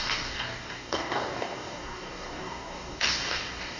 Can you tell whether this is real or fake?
fake